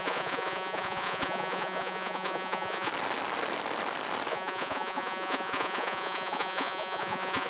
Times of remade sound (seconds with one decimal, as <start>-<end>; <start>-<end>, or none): 0.0-2.9; 4.3-7.5